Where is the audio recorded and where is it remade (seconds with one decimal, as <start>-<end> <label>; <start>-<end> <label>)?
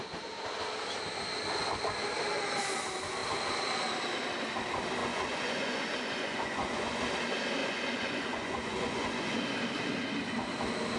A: 0.0-5.0 recorded; 5.0-7.0 remade; 7.0-7.6 recorded; 7.6-9.4 remade; 9.4-11.0 recorded